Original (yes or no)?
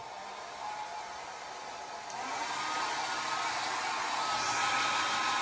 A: yes